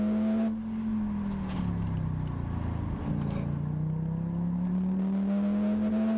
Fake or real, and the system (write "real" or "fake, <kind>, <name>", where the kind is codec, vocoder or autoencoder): real